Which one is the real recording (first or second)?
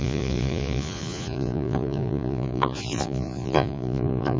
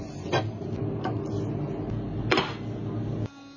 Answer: second